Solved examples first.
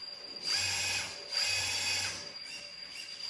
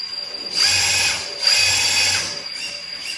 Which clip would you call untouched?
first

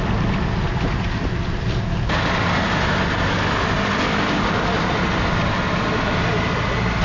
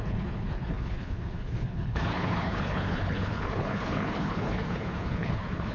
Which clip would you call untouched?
first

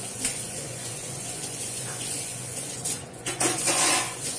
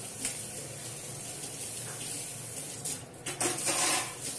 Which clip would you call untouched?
second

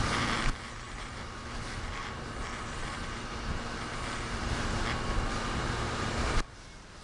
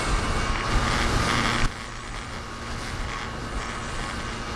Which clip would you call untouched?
second